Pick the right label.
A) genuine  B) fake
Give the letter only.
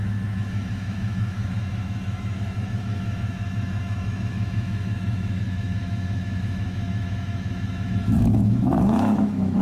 B